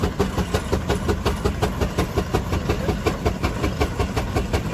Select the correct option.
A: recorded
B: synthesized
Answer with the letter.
A